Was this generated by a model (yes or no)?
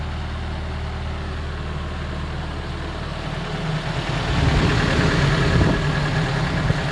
no